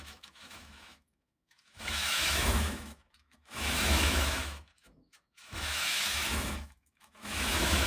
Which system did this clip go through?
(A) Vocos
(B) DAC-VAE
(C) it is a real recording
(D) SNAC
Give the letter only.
B